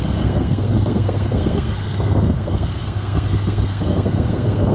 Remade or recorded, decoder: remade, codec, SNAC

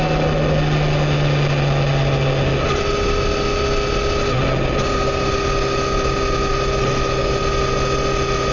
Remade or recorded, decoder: recorded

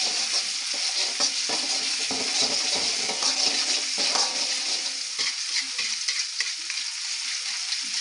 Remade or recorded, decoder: recorded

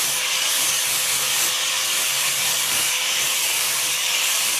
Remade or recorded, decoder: remade, codec, DAC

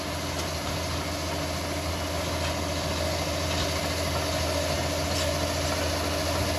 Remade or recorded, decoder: recorded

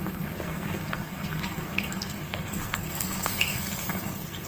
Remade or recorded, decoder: remade, codec, SNAC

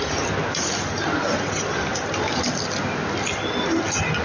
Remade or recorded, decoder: recorded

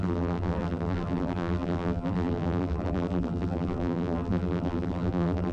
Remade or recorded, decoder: remade, vocoder, BigVGAN v2